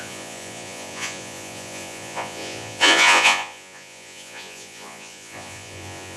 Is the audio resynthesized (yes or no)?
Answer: yes